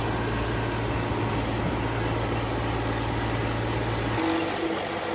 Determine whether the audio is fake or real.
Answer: real